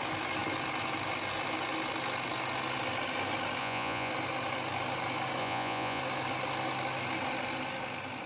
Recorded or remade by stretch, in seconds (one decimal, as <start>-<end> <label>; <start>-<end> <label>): 0.0-3.6 recorded; 3.6-4.1 remade; 4.1-5.4 recorded; 5.4-6.0 remade; 6.0-8.3 recorded